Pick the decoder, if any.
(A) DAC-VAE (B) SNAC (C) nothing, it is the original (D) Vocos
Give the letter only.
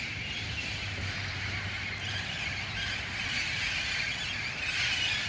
C